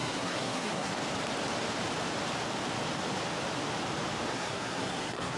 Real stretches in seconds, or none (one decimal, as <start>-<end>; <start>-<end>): 0.9-4.3